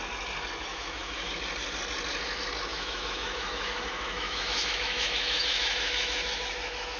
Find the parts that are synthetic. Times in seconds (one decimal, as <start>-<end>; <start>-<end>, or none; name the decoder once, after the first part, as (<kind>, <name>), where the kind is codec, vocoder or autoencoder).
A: 0.7-1.3 (autoencoder, DAC-VAE); 2.7-7.0

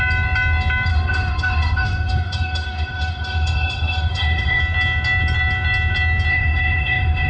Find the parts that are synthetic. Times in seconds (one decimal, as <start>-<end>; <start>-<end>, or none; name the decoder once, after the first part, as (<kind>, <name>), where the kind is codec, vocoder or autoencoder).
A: 0.9-4.6 (autoencoder, DAC-VAE); 6.3-7.3

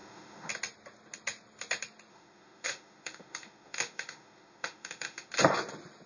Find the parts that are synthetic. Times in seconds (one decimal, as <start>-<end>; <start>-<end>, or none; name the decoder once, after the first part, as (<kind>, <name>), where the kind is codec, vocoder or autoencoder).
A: 0.0-0.5 (autoencoder, DAC-VAE); 2.1-5.3